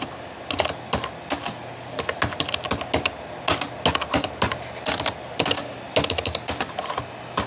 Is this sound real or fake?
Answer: real